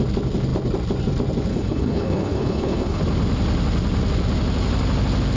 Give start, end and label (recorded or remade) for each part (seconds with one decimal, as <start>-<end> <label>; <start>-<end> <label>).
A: 0.0-1.5 recorded; 1.5-3.0 remade; 3.0-5.4 recorded